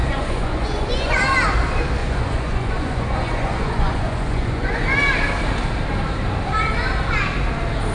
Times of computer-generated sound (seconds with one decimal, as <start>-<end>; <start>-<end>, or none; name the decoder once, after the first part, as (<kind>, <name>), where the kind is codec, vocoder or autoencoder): 0.0-1.2 (vocoder, Vocos); 2.0-4.8